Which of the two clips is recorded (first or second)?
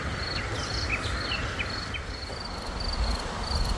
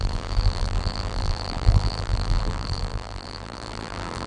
first